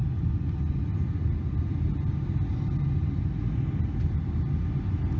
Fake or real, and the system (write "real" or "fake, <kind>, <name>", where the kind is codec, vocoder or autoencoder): real